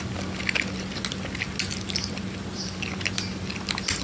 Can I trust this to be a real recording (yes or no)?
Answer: yes